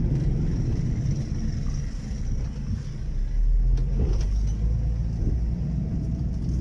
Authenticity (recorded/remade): recorded